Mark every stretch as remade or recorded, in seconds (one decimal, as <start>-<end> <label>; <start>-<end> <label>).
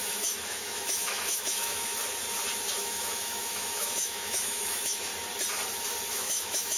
0.0-1.9 remade; 1.9-2.8 recorded; 2.8-5.1 remade; 5.1-6.1 recorded; 6.1-6.8 remade